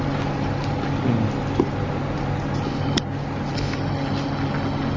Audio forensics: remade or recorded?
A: recorded